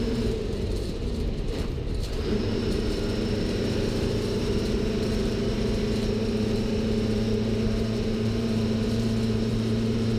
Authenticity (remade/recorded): remade